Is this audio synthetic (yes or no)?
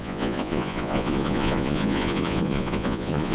yes